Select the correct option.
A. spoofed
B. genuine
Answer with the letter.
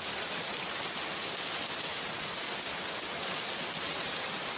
B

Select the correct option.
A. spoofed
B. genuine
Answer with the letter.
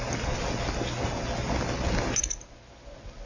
B